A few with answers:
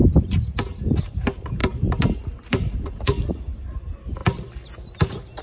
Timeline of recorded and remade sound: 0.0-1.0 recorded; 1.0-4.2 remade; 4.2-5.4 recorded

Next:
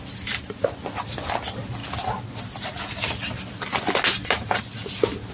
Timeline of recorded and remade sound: 0.0-5.3 recorded

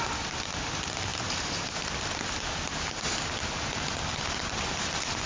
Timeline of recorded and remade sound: 0.0-1.1 recorded; 1.1-3.3 remade; 3.3-5.3 recorded

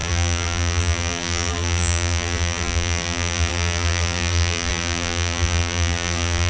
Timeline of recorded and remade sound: 0.0-6.5 remade

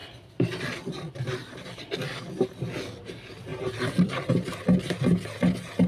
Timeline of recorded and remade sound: 0.0-1.9 remade; 1.9-3.5 recorded; 3.5-4.3 remade; 4.3-5.9 recorded

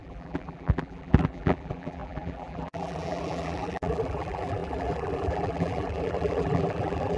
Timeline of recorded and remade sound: 0.0-7.2 remade

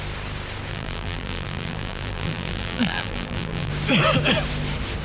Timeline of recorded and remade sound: 0.0-0.7 recorded; 0.7-3.7 remade; 3.7-5.0 recorded

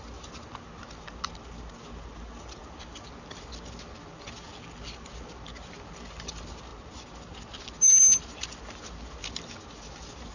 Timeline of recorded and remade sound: 0.0-6.7 recorded; 6.7-7.9 remade; 7.9-10.3 recorded